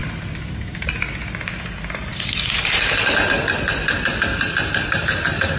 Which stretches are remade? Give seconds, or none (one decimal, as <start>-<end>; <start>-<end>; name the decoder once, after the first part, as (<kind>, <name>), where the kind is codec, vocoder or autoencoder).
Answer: 0.0-0.5 (vocoder, BigVGAN v2); 2.1-5.6

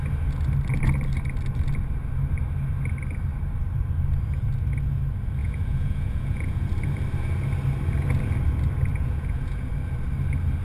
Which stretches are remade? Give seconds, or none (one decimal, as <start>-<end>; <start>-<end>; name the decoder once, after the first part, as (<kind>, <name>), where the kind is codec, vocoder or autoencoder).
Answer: 5.4-6.7 (vocoder, Vocos); 8.9-9.7

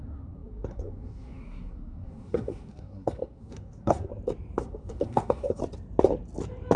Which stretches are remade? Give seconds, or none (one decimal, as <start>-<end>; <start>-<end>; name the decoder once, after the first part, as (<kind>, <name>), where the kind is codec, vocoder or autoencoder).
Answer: 0.0-4.1 (codec, SNAC); 4.6-5.6

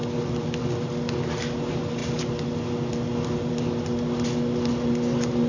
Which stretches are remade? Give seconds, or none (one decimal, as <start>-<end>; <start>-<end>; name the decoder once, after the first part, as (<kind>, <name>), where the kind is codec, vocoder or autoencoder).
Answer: none

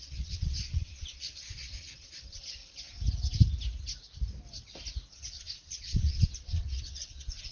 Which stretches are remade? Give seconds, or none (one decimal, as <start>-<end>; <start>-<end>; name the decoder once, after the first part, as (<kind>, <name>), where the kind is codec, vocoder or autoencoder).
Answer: 0.0-2.6 (vocoder, WaveNeXt); 5.1-7.5